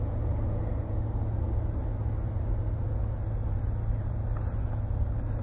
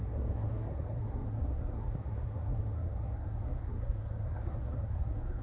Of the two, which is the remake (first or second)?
second